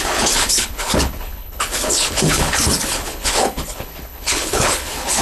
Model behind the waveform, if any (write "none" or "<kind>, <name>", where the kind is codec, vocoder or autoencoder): codec, HILCodec